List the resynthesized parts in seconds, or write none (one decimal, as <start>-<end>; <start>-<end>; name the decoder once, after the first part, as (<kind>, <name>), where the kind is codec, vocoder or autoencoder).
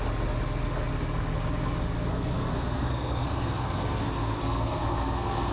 2.1-5.5 (codec, SNAC)